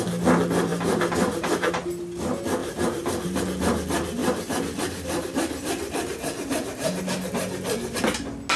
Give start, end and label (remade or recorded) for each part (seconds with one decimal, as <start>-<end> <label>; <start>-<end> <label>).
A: 0.0-0.7 recorded; 0.7-1.7 remade; 1.7-2.6 recorded; 2.6-3.4 remade; 3.4-4.2 recorded; 4.2-7.0 remade; 7.0-8.6 recorded